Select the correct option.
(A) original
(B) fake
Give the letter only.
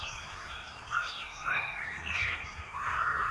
B